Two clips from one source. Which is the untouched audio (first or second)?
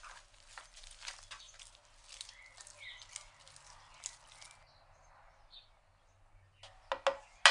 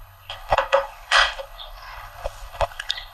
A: first